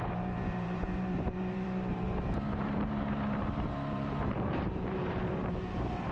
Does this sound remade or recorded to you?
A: remade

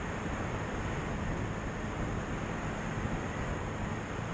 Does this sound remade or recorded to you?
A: remade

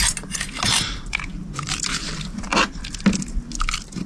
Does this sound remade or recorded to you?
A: recorded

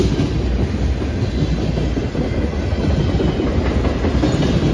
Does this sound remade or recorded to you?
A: recorded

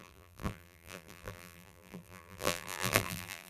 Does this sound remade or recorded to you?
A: remade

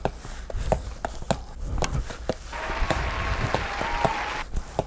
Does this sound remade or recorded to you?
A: recorded